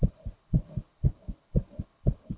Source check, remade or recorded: remade